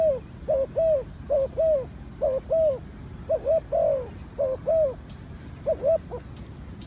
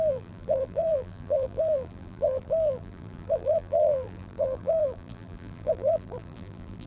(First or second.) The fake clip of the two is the second